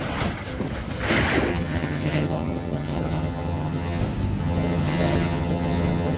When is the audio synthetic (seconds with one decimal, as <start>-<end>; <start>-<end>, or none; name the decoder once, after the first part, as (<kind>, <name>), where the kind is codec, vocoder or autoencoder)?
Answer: 1.5-4.0 (vocoder, HiFi-GAN); 4.4-6.2